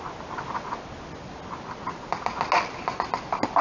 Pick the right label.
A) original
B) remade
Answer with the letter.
A